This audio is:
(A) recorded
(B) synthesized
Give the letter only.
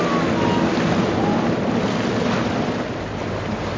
A